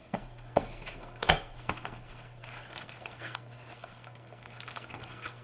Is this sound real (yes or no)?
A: no